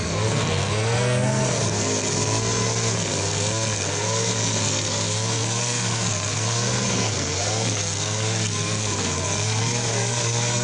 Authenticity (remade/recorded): remade